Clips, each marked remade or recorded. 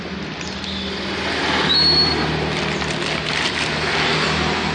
recorded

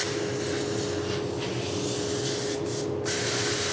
recorded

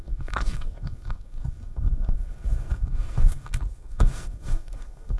remade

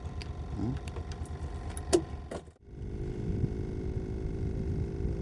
recorded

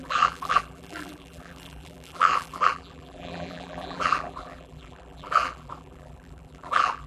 remade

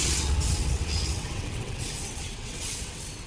remade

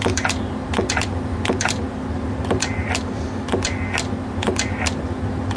recorded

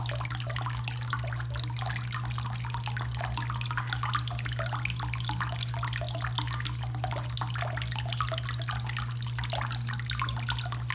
recorded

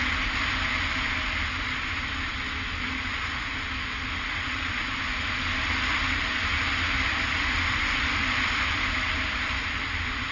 recorded